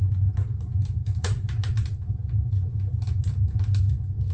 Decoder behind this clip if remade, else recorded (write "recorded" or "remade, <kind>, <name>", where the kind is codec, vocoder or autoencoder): recorded